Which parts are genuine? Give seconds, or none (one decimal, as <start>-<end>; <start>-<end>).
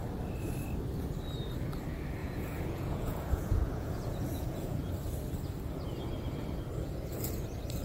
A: 0.0-2.2; 4.9-7.8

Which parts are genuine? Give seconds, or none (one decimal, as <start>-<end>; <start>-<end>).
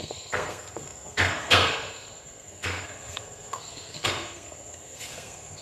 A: none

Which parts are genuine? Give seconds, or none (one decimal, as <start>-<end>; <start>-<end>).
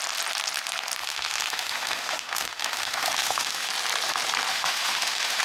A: 0.0-1.0; 3.7-4.5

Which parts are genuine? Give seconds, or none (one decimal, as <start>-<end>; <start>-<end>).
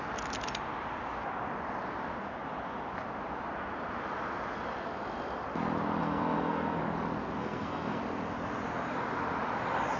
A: 0.0-6.0; 6.8-7.4; 8.0-10.0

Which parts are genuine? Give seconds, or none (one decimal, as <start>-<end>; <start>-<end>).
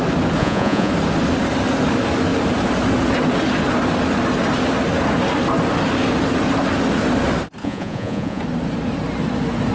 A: 0.0-0.4; 0.9-7.6; 8.4-9.7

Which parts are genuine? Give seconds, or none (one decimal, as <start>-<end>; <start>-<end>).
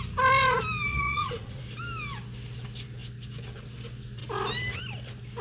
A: 0.0-0.9; 1.6-5.4